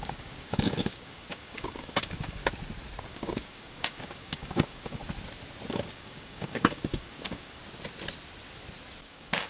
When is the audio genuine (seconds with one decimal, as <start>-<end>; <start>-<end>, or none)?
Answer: 2.4-3.0; 5.0-5.7; 7.6-9.0